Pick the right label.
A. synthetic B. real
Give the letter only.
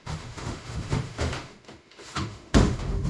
A